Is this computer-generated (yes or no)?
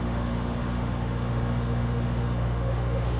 yes